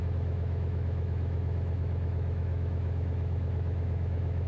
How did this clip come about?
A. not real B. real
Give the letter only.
A